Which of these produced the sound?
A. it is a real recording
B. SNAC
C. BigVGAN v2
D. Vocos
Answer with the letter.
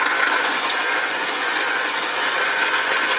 D